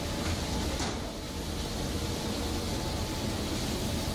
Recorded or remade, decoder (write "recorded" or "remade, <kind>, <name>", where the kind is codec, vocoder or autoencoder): recorded